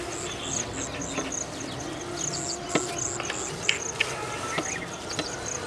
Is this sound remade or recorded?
recorded